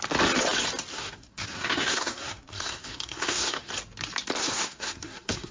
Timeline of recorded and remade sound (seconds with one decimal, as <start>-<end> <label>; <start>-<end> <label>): 0.0-0.9 recorded; 0.9-3.7 remade; 3.7-4.4 recorded; 4.4-5.5 remade